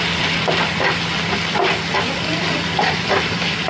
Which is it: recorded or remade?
recorded